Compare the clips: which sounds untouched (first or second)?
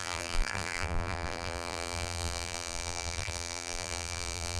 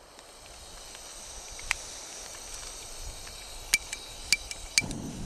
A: second